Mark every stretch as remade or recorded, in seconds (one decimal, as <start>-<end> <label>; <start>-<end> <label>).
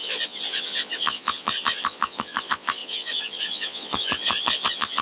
0.0-5.0 remade